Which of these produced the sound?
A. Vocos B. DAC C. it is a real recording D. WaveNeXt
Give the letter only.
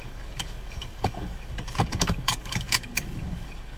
B